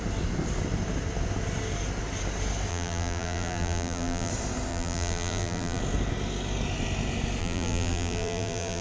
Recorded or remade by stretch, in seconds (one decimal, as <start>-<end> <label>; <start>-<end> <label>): 0.0-2.7 recorded; 2.7-4.3 remade; 4.3-4.7 recorded; 4.7-5.8 remade; 5.8-7.4 recorded; 7.4-8.8 remade